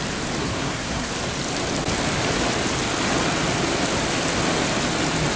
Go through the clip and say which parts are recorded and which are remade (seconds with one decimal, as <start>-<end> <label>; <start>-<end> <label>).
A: 0.0-0.4 recorded; 0.4-1.1 remade; 1.1-5.4 recorded